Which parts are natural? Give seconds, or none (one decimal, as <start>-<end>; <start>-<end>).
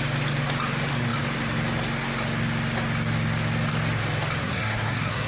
0.0-4.4